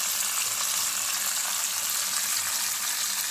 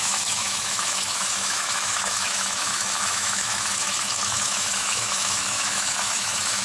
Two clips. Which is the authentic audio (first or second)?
first